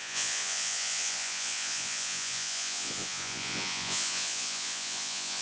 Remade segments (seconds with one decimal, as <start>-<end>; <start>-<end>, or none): 0.0-5.4